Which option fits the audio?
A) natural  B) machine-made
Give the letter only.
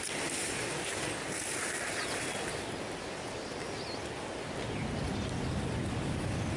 A